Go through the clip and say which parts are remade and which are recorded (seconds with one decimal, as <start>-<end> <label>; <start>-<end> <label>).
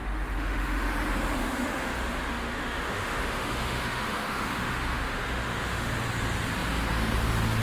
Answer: 0.0-0.9 remade; 0.9-1.4 recorded; 1.4-5.9 remade; 5.9-7.6 recorded